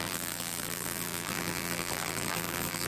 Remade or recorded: remade